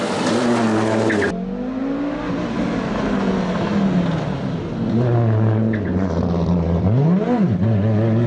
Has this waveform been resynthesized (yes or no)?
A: no